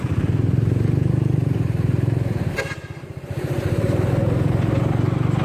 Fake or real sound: fake